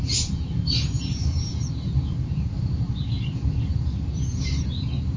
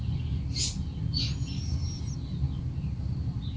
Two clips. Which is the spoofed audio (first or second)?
first